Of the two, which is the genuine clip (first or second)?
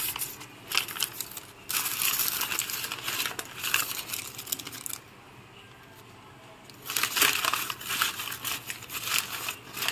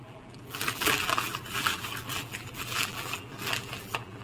first